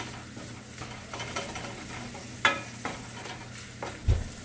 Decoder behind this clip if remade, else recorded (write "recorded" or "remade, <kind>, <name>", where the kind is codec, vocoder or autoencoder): recorded